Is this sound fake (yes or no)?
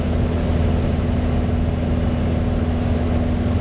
no